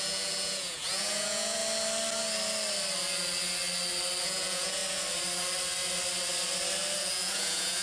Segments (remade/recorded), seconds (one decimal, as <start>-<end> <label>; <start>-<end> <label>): 0.0-1.6 remade; 1.6-4.2 recorded; 4.2-4.8 remade; 4.8-7.0 recorded; 7.0-7.8 remade